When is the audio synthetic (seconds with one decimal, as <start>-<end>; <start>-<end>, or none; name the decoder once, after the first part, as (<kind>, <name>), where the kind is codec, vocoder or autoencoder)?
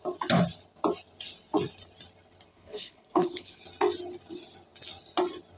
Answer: 2.5-3.6 (codec, HILCodec)